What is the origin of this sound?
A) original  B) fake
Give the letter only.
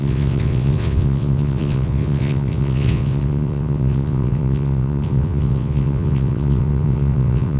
B